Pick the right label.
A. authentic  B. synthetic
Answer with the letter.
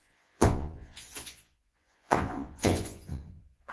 B